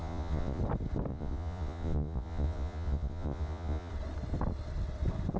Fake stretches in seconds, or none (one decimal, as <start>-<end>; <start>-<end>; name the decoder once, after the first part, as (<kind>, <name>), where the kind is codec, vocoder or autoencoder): 0.0-0.6 (vocoder, Vocos); 1.1-3.9